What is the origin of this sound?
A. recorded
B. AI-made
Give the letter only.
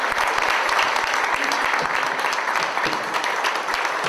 A